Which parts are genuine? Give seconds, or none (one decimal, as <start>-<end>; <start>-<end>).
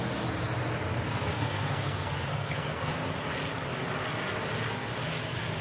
0.0-1.3; 2.9-5.6